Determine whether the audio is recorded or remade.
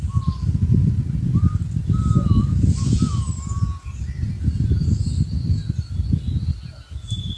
recorded